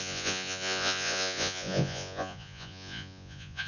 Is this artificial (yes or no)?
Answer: yes